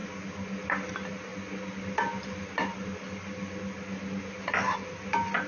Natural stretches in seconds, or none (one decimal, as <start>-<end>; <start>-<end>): 0.0-5.5